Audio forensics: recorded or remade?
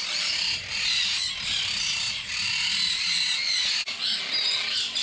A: recorded